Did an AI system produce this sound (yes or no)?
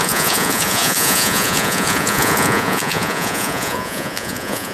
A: yes